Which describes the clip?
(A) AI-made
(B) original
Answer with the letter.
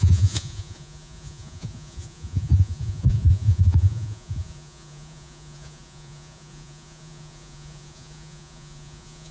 A